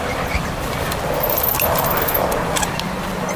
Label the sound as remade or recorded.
remade